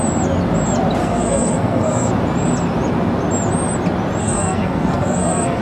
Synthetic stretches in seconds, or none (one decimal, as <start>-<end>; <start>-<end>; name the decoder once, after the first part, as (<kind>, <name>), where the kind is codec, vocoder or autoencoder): 1.0-2.1 (codec, SNAC); 4.2-5.6